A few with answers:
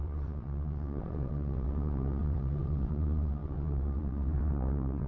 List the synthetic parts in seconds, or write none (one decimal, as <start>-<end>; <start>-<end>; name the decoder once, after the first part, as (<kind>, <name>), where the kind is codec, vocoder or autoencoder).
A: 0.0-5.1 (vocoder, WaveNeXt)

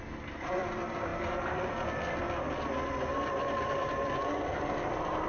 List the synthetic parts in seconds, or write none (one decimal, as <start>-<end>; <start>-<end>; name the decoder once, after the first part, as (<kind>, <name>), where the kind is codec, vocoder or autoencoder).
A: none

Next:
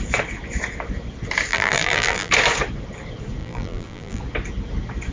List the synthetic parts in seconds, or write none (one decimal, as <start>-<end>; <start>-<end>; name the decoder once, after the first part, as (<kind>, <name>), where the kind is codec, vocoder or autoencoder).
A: 1.5-2.3 (vocoder, BigVGAN v2); 3.4-4.2

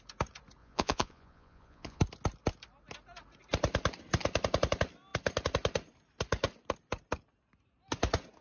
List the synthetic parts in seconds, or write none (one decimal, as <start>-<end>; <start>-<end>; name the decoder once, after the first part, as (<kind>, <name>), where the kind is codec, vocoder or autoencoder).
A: 0.6-2.0 (vocoder, Vocos)